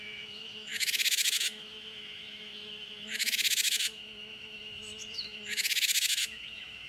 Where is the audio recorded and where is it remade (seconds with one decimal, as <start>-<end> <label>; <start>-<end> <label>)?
0.0-6.9 remade